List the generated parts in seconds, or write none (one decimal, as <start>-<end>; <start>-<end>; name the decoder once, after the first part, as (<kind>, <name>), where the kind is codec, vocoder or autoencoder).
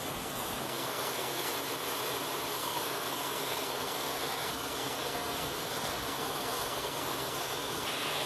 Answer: 0.0-1.5 (codec, SNAC); 2.5-8.3